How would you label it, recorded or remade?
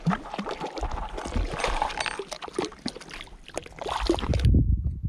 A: recorded